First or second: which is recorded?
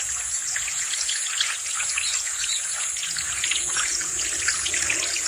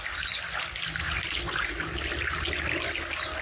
second